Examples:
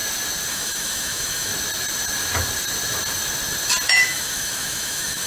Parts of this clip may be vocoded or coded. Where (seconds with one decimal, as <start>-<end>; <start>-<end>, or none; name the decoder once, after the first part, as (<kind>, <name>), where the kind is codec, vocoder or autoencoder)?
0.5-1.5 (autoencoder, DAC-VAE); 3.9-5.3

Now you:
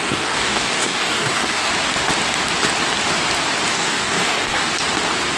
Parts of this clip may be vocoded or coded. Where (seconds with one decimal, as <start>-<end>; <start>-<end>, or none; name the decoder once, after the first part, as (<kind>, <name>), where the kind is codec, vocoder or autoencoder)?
0.0-1.7 (codec, DAC); 3.7-4.7

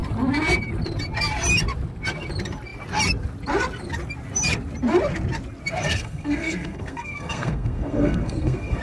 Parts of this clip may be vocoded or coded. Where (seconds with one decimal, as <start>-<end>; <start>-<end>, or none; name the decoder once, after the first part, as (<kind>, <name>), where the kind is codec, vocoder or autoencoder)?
5.9-8.8 (codec, SNAC)

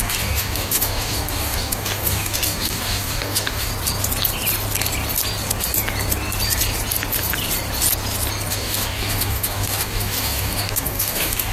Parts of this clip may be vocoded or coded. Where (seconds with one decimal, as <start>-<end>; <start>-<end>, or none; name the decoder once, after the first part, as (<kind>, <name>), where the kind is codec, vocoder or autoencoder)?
0.0-3.7 (codec, DAC); 8.5-11.5

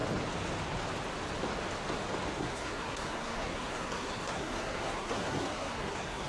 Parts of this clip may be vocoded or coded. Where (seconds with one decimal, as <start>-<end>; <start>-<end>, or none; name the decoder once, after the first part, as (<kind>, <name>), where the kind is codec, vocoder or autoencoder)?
2.4-6.3 (codec, SNAC)